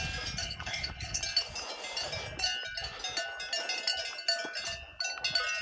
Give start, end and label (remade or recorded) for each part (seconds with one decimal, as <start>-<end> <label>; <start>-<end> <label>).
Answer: 0.0-0.4 recorded; 0.4-1.2 remade; 1.2-5.6 recorded